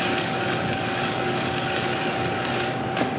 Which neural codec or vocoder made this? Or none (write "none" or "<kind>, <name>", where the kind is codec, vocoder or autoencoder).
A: codec, DAC